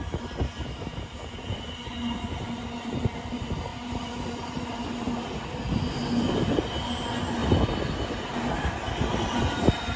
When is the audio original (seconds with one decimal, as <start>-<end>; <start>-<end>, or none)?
0.0-10.0